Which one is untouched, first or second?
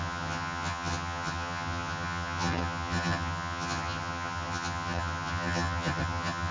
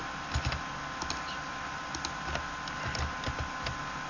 second